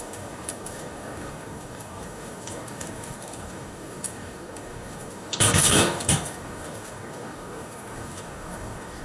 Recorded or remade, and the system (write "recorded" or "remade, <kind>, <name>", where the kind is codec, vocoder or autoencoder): remade, codec, DAC